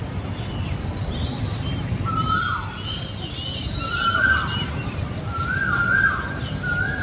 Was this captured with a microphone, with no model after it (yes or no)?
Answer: yes